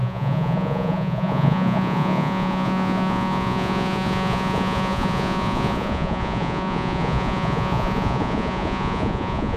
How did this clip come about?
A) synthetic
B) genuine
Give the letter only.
A